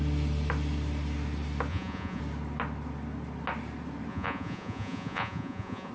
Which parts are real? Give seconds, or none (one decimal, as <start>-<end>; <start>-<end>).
0.0-1.7; 2.2-4.1